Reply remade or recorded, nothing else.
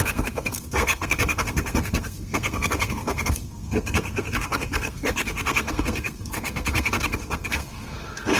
remade